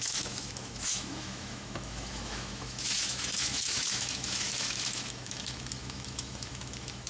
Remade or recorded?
remade